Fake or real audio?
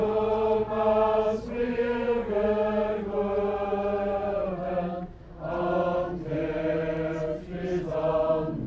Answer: real